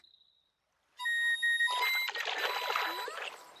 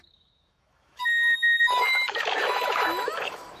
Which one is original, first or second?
first